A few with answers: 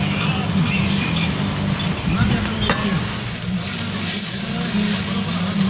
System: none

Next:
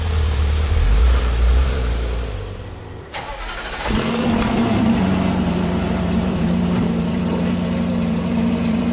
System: vocoder, BigVGAN v2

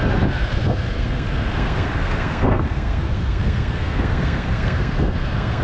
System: codec, SNAC